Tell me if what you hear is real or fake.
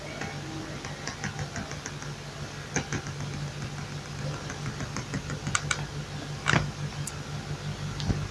real